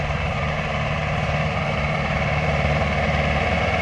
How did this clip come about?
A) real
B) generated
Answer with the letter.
B